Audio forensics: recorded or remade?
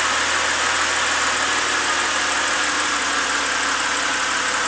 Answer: recorded